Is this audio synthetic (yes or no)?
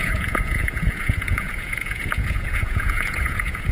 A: yes